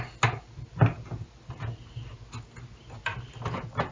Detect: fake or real real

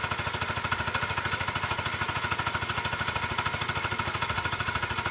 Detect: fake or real real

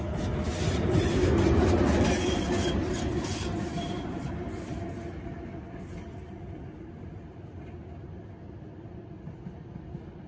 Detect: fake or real real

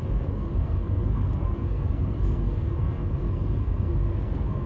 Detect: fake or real fake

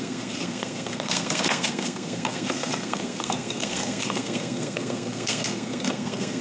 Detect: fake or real fake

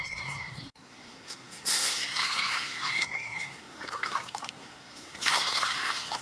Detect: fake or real fake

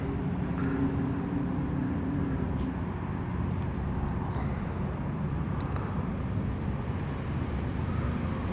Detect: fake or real real